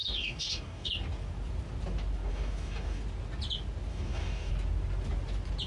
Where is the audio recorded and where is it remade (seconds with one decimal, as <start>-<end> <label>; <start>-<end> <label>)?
0.0-0.9 remade; 0.9-2.3 recorded; 2.3-3.0 remade; 3.0-3.9 recorded; 3.9-4.5 remade; 4.5-5.7 recorded